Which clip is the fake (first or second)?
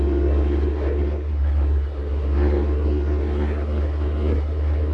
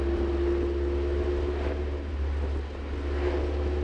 first